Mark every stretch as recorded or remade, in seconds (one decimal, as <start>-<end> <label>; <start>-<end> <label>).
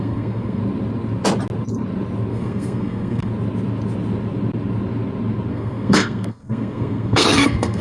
0.0-0.6 remade; 0.6-2.3 recorded; 2.3-3.3 remade; 3.3-5.5 recorded; 5.5-7.8 remade